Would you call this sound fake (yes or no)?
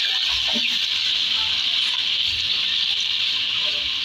no